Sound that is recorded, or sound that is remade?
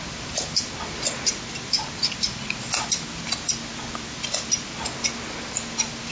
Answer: recorded